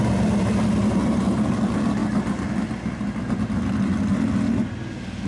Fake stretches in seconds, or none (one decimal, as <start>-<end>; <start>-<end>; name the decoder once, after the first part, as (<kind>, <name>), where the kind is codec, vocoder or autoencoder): none